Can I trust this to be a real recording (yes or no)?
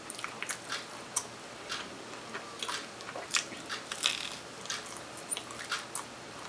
yes